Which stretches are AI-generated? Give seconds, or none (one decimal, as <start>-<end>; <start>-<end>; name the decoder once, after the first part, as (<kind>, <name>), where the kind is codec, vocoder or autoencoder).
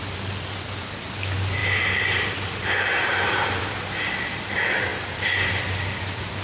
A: none